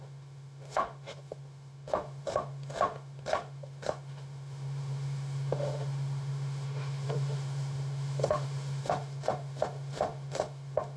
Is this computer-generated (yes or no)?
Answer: yes